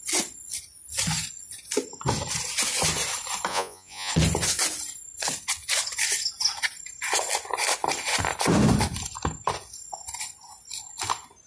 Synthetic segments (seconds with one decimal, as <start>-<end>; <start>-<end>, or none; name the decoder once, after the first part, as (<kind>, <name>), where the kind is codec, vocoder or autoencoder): 3.5-4.1 (vocoder, Vocos)